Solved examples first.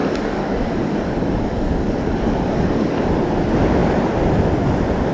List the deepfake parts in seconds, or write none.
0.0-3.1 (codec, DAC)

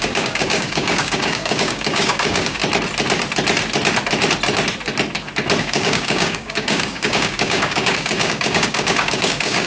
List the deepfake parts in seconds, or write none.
0.0-2.6 (codec, DAC); 5.6-9.7

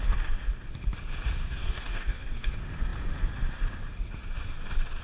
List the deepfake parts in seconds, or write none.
1.4-2.5 (codec, DAC)